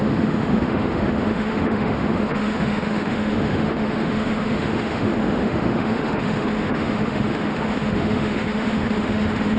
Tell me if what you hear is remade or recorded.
remade